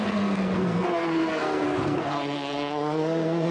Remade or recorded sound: remade